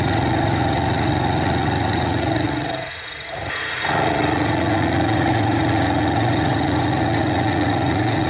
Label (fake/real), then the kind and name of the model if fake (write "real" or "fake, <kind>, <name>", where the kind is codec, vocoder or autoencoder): fake, vocoder, Vocos